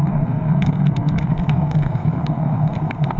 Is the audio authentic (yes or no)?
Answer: no